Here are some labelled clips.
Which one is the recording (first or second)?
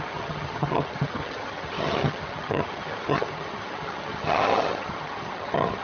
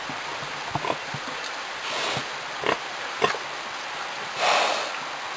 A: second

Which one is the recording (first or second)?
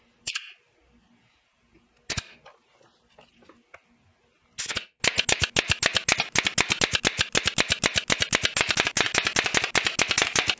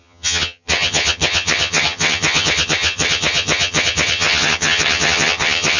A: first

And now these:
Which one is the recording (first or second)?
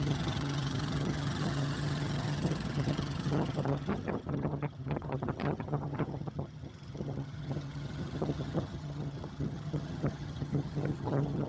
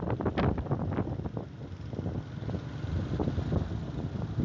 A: second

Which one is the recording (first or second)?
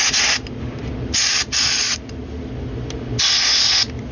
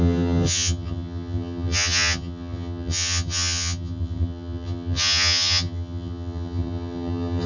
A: first